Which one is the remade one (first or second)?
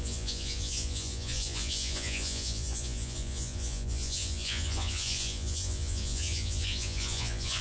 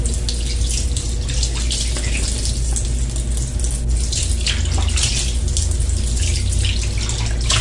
first